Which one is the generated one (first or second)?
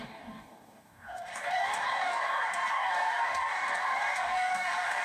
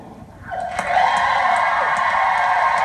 first